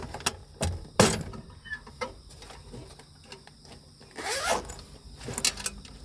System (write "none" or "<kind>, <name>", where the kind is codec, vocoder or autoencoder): none